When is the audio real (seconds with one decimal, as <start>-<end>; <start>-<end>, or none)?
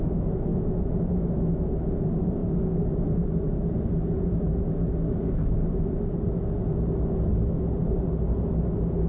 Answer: 0.0-0.5; 1.7-9.1